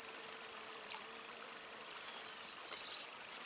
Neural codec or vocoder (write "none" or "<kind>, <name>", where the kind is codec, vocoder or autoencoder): vocoder, BigVGAN v2